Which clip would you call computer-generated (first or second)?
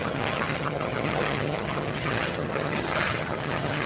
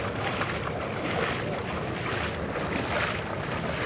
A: first